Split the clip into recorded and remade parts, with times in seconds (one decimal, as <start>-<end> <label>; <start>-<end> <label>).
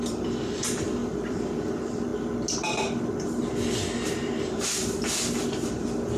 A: 0.0-2.1 remade; 2.1-5.8 recorded; 5.8-6.2 remade